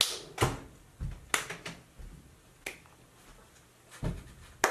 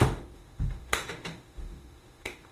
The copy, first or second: second